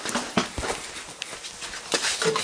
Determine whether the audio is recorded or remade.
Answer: recorded